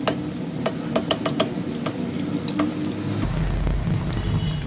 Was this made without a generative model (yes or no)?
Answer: yes